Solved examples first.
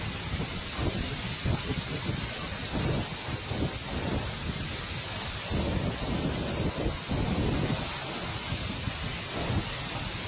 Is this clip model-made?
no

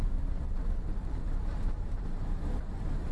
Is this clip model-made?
yes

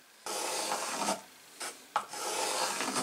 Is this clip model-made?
no